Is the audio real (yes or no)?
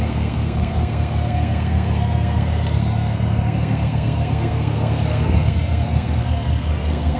no